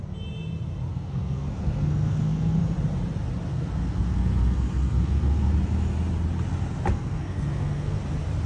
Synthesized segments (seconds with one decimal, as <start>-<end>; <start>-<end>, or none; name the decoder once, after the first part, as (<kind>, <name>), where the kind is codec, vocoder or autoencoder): 0.9-2.6 (codec, SNAC); 3.5-5.5; 6.9-8.0